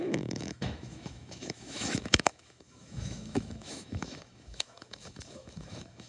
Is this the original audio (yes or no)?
no